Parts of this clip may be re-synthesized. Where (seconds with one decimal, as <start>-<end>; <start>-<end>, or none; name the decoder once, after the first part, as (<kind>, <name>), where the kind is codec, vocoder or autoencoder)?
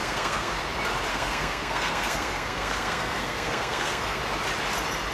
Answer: 0.0-0.6 (codec, SNAC); 1.1-4.2